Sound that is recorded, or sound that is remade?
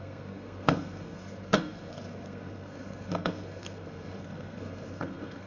remade